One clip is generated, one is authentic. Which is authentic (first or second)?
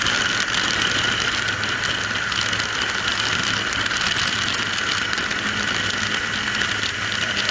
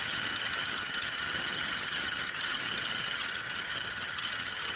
first